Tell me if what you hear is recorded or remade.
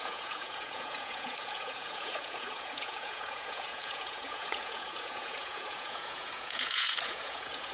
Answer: remade